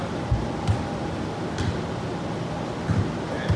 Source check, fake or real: real